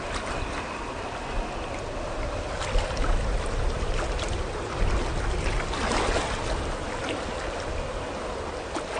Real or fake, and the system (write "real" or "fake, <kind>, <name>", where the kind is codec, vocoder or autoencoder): real